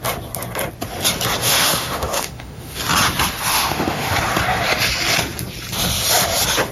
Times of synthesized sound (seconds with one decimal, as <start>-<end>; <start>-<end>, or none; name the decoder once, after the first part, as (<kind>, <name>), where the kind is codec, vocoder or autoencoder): 1.4-2.8 (autoencoder, DAC-VAE); 3.5-4.2